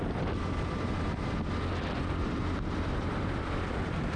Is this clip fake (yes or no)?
yes